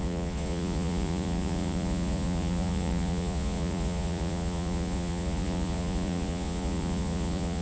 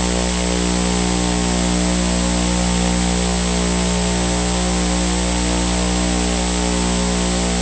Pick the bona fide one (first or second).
second